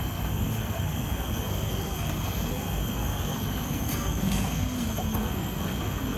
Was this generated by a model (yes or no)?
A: yes